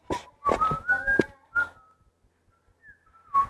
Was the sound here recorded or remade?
recorded